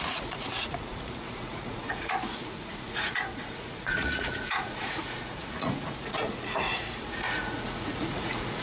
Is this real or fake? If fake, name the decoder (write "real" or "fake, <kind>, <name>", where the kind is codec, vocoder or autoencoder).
fake, vocoder, Vocos